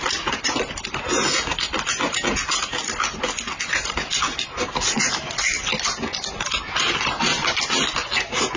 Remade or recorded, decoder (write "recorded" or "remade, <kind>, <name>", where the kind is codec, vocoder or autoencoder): recorded